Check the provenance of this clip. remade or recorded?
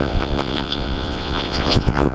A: remade